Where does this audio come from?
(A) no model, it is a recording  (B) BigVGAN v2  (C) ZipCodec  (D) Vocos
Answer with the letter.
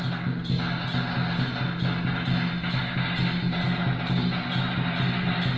A